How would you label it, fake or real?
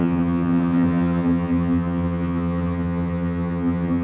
fake